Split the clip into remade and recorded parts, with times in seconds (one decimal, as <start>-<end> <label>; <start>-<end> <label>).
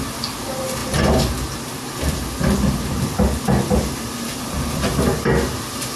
0.0-6.0 recorded